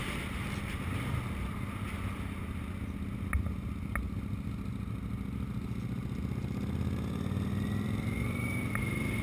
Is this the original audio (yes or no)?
yes